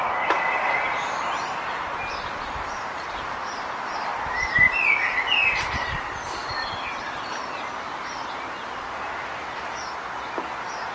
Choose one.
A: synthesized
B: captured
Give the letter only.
B